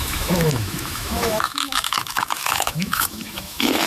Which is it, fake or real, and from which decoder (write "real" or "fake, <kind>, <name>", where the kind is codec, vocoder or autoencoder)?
fake, autoencoder, DAC-VAE